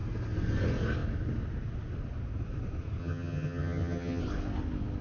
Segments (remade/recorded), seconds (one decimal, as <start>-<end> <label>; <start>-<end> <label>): 0.0-3.0 recorded; 3.0-4.2 remade; 4.2-5.0 recorded